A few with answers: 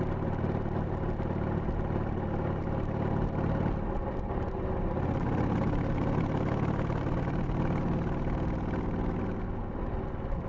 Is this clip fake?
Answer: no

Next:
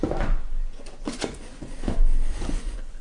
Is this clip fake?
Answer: yes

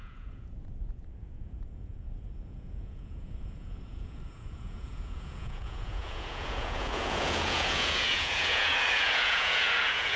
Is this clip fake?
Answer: yes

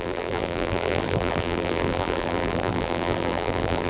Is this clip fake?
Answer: yes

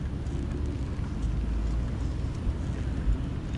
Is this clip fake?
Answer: no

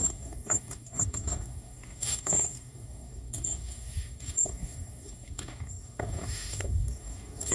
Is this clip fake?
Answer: yes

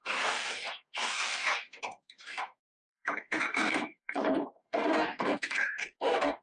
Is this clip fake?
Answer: yes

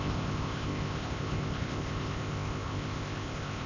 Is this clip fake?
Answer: yes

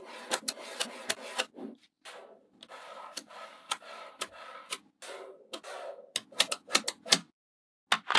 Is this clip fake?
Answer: no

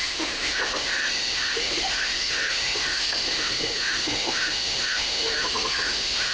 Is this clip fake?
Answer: yes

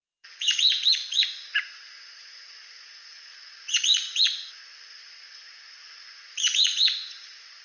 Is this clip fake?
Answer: yes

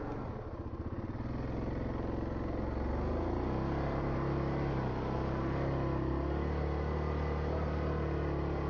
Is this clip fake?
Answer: no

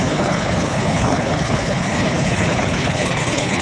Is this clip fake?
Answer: yes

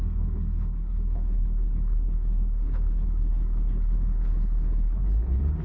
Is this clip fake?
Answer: yes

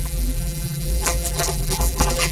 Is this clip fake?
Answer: yes